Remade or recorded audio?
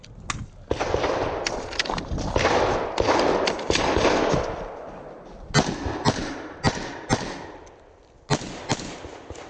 recorded